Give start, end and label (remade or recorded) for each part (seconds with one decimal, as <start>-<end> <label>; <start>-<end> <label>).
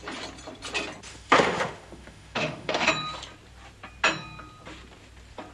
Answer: 0.0-1.1 recorded; 1.1-2.9 remade; 2.9-5.5 recorded